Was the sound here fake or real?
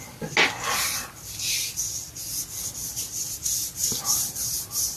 real